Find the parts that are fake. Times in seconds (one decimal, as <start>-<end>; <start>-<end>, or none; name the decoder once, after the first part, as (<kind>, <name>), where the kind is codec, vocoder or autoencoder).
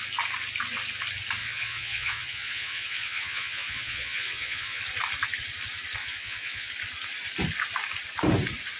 1.4-4.8 (vocoder, Vocos); 6.0-6.7